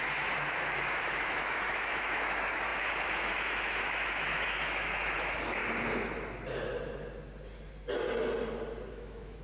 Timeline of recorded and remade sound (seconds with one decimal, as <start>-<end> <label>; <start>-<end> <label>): 0.0-5.6 remade; 5.6-8.9 recorded; 8.9-9.4 remade